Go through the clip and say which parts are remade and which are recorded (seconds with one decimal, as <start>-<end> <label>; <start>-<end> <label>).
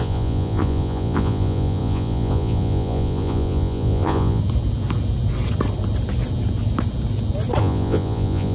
0.0-4.4 remade; 4.4-7.6 recorded; 7.6-8.5 remade